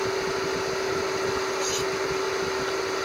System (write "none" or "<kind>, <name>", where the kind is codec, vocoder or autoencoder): none